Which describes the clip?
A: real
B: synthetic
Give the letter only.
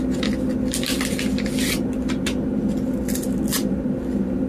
A